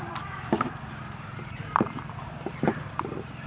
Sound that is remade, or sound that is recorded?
remade